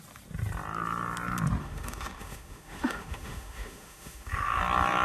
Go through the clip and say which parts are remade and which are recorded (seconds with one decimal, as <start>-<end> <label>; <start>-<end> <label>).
0.0-1.6 recorded; 1.6-4.6 remade; 4.6-5.0 recorded